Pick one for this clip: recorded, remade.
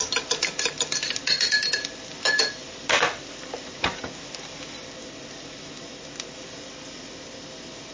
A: recorded